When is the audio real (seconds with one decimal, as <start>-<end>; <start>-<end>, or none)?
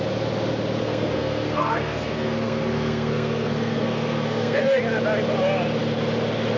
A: 0.0-0.8; 4.8-6.6